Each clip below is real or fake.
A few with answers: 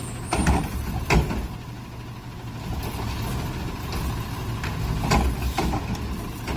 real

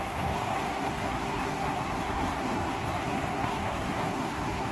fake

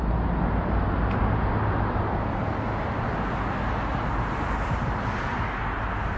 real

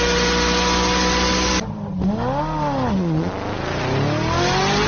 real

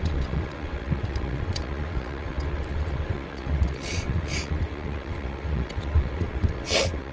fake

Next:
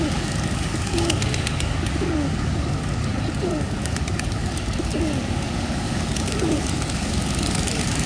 fake